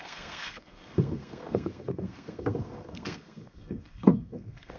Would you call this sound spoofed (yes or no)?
yes